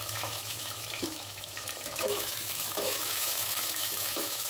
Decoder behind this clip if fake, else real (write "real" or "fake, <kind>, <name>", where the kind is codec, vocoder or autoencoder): fake, autoencoder, DAC-VAE